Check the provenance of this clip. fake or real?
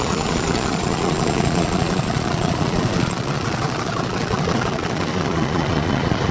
fake